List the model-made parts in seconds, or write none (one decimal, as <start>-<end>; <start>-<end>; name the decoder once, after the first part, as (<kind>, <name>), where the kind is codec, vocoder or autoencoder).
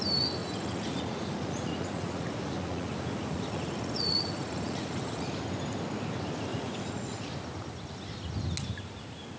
0.4-5.4 (vocoder, Vocos); 6.5-7.3